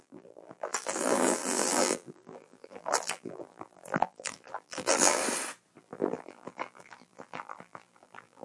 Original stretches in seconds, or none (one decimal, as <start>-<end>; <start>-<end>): 5.2-5.8

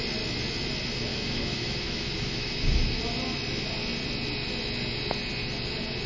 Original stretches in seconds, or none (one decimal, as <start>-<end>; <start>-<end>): 0.0-1.1; 3.0-6.1